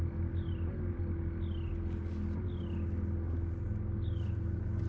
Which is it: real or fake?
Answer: real